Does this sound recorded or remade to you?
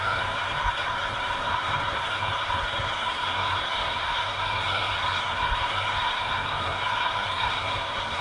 remade